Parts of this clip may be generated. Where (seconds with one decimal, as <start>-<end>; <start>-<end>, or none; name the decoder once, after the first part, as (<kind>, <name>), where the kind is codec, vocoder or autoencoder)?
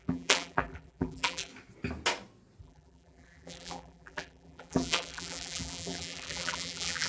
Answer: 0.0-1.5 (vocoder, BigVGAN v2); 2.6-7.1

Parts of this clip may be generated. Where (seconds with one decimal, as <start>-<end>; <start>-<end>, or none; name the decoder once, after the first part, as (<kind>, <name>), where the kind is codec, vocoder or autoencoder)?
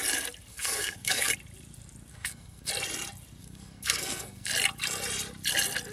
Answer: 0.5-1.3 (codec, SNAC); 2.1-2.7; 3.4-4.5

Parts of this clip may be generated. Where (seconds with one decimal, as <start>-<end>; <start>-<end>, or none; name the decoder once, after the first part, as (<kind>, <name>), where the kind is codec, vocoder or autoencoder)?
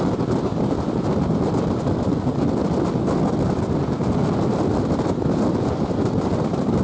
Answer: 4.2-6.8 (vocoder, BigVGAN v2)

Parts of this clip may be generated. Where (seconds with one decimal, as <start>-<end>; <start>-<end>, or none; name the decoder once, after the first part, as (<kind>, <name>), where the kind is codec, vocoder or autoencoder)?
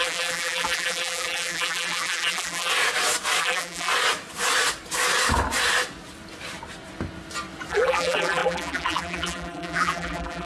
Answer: 0.0-2.7 (vocoder, BigVGAN v2); 3.4-3.9; 7.7-10.4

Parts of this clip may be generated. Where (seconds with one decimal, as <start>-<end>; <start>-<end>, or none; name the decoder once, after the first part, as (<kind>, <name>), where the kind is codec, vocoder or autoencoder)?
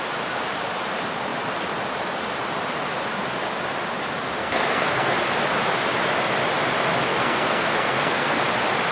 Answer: 4.4-5.1 (codec, SNAC); 7.1-8.4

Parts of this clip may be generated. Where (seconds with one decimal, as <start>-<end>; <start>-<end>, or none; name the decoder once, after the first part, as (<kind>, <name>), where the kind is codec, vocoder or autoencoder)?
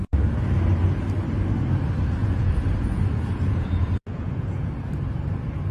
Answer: 2.2-4.7 (vocoder, Vocos)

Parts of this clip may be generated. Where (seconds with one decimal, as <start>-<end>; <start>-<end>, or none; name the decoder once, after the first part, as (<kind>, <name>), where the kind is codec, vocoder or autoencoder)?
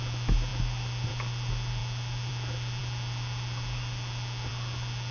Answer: none